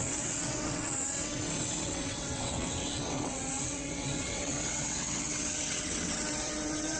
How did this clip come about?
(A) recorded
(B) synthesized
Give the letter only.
B